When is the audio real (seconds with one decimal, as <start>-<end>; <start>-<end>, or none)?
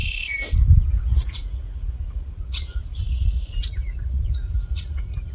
0.0-0.9